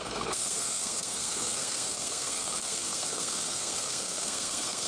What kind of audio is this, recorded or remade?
remade